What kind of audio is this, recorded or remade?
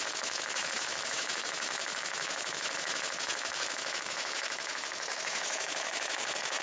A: remade